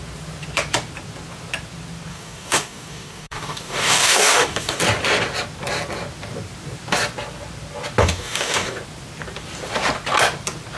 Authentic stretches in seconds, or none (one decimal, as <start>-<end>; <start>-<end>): 0.0-2.1; 4.8-8.0; 8.8-10.8